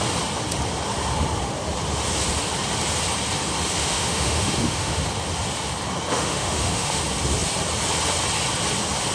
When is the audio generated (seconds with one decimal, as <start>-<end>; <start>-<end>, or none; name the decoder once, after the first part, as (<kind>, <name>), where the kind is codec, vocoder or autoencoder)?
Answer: 3.8-5.0 (autoencoder, DAC-VAE); 6.1-7.0